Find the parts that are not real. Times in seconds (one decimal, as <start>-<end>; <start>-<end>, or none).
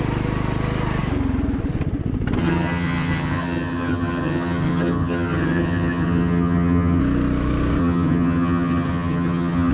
2.4-7.0; 7.8-9.7